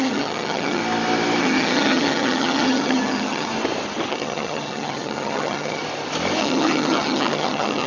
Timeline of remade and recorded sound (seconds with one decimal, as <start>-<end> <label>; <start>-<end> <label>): 0.0-0.8 remade; 0.8-1.4 recorded; 1.4-3.5 remade; 3.5-4.1 recorded; 4.1-5.8 remade; 5.8-6.4 recorded; 6.4-7.9 remade